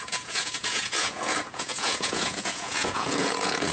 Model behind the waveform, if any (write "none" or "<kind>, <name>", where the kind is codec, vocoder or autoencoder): vocoder, Vocos